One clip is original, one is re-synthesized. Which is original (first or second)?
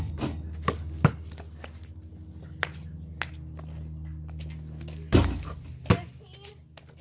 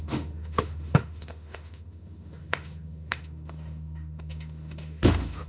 first